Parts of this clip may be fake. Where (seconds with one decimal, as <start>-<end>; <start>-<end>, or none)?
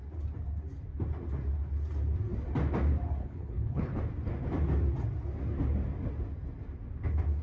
3.2-4.0